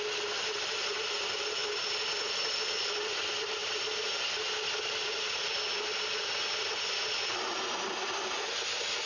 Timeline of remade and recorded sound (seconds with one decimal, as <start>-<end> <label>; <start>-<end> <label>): 0.0-1.6 remade; 1.6-2.2 recorded; 2.2-3.6 remade; 3.6-6.7 recorded; 6.7-9.1 remade